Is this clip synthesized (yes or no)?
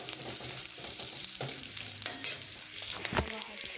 yes